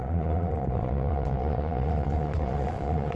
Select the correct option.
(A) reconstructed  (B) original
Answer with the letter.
A